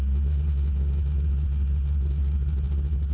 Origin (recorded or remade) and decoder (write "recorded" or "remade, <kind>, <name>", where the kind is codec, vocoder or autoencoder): recorded